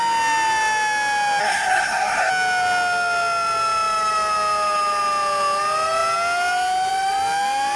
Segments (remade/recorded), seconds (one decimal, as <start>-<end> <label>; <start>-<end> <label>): 0.0-1.4 recorded; 1.4-2.3 remade; 2.3-7.8 recorded